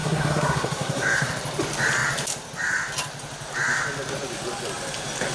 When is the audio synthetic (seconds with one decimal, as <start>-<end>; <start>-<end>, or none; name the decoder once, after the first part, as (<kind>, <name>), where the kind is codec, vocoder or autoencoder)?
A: 0.0-1.3 (codec, SNAC)